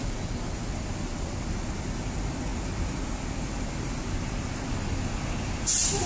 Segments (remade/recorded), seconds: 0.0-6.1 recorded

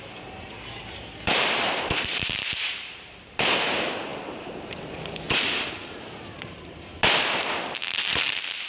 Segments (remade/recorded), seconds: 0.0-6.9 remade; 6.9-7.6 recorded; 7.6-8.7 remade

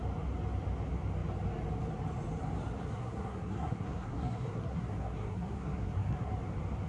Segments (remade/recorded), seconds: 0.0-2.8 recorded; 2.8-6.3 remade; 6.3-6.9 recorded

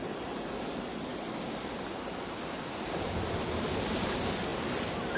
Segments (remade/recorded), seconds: 0.0-5.2 recorded

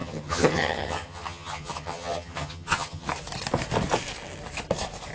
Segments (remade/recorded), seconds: 0.0-3.1 remade; 3.1-5.1 recorded